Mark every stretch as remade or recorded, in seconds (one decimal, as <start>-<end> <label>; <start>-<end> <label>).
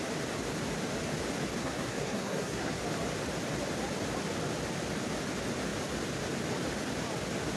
0.0-1.6 recorded; 1.6-2.8 remade; 2.8-7.6 recorded